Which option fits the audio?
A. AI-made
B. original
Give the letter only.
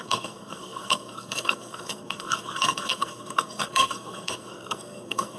A